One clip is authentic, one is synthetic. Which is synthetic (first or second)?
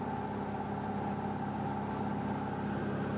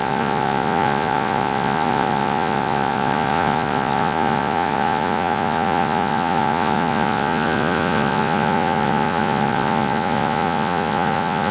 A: second